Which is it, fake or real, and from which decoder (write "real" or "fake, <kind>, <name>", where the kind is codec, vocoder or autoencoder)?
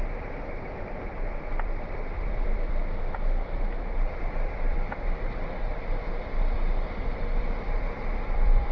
fake, vocoder, BigVGAN v2